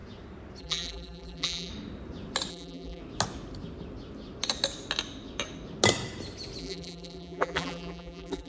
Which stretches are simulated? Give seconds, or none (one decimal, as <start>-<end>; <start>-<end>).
0.6-1.7; 2.5-3.0; 6.6-8.5